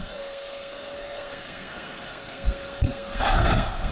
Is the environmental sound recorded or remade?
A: remade